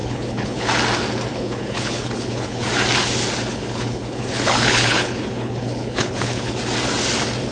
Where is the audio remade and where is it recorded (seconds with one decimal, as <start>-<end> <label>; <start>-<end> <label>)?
0.0-0.7 remade; 0.7-1.3 recorded; 1.3-2.7 remade; 2.7-3.5 recorded; 3.5-6.6 remade; 6.6-7.5 recorded